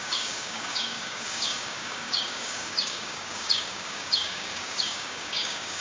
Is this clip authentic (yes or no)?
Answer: no